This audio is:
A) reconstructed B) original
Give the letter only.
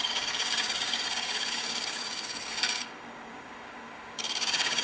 A